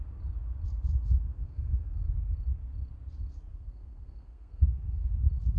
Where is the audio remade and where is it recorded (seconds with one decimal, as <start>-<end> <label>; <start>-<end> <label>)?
0.0-1.3 recorded; 1.3-2.0 remade; 2.0-3.5 recorded; 3.5-5.1 remade; 5.1-5.6 recorded